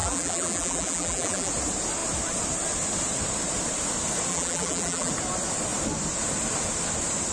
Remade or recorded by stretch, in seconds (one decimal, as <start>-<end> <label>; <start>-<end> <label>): 0.0-1.5 remade; 1.5-4.3 recorded; 4.3-5.1 remade; 5.1-7.3 recorded